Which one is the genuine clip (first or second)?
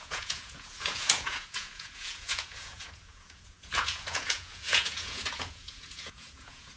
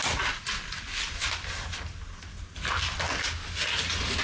second